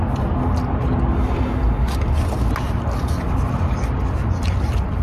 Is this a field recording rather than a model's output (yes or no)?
yes